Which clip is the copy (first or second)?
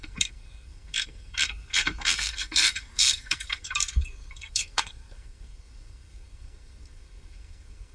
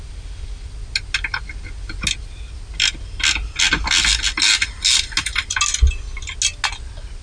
first